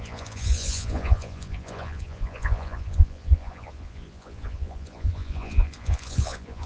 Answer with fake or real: fake